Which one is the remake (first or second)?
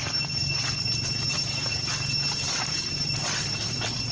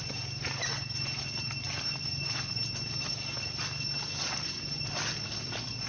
first